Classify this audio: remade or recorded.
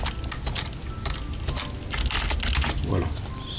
recorded